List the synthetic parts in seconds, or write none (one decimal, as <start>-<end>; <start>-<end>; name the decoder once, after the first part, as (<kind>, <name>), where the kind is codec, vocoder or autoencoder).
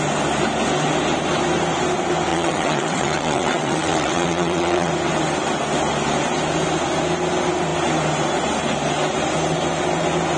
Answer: 2.3-4.9 (vocoder, WaveNeXt)